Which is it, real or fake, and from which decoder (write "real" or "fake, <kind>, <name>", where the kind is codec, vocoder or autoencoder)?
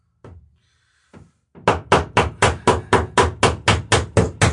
real